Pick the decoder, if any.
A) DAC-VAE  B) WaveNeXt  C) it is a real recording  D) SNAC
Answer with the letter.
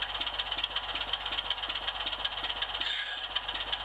C